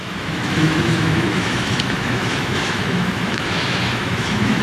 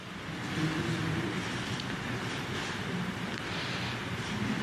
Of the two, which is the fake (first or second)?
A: first